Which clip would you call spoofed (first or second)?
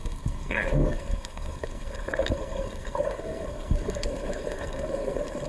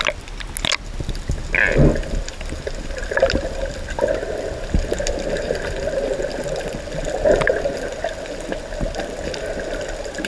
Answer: first